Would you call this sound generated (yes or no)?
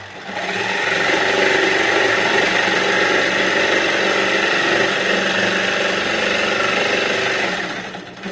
no